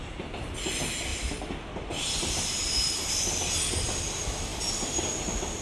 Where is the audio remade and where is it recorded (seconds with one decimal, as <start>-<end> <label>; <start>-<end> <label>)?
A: 0.0-5.6 recorded